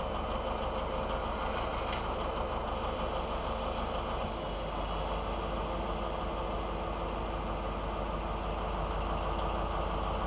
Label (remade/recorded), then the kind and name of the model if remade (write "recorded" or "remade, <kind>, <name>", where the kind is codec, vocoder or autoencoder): recorded